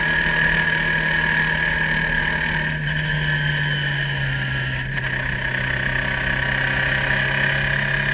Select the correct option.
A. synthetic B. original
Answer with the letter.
B